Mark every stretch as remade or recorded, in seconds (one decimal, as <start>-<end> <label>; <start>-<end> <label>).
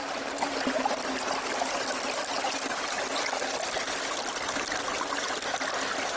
0.0-6.2 recorded